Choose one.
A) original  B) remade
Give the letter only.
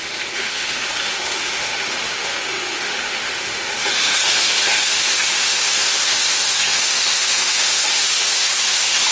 B